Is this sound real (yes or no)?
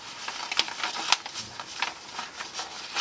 yes